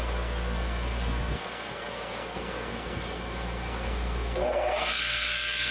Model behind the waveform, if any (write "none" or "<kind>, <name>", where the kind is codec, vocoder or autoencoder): codec, SNAC